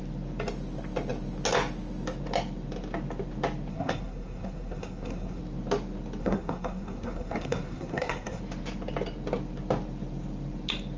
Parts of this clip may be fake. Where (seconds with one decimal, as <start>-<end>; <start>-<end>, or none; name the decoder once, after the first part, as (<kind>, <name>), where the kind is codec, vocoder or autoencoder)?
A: 3.7-5.4 (codec, SNAC); 6.2-8.4